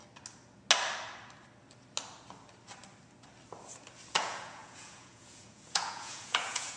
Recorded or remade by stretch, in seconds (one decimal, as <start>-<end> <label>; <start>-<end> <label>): 0.0-4.1 recorded; 4.1-6.8 remade